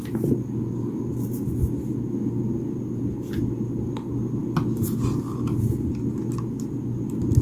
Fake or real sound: real